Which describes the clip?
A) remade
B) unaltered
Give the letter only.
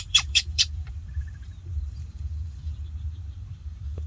A